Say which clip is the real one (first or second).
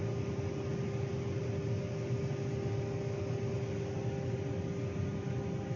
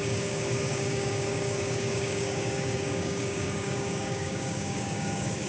first